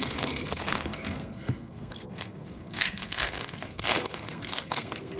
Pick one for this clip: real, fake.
fake